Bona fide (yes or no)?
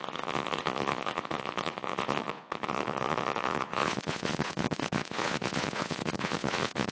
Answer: no